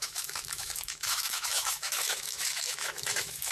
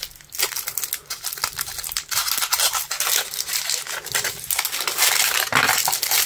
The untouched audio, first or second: second